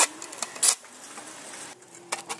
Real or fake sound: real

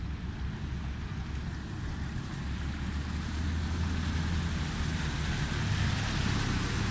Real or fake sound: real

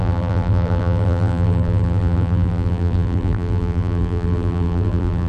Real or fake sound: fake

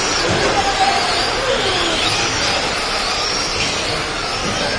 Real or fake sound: real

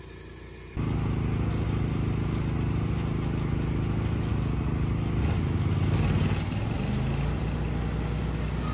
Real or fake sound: real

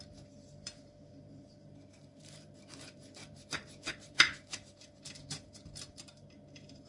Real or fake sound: fake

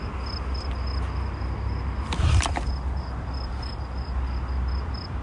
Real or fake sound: real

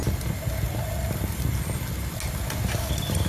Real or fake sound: real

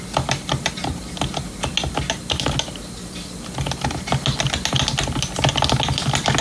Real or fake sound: real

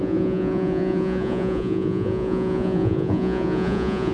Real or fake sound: fake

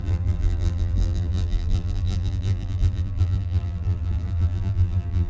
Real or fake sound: fake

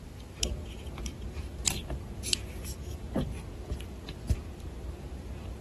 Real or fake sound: fake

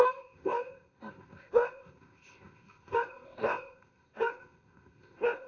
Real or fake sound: fake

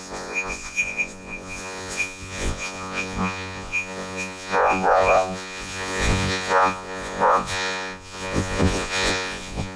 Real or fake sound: fake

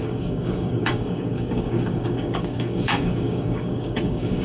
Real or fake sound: fake